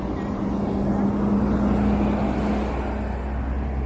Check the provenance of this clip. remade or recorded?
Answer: recorded